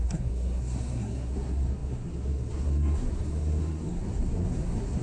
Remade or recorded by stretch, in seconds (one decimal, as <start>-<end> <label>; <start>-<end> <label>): 0.0-5.0 remade